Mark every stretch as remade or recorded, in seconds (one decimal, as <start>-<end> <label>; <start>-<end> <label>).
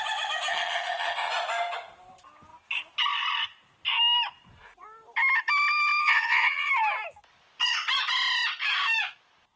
0.0-0.5 recorded; 0.5-1.3 remade; 1.3-6.0 recorded; 6.0-6.7 remade; 6.7-9.6 recorded